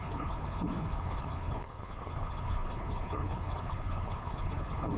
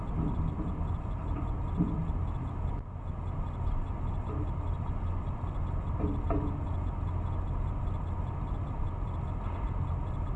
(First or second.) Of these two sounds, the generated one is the first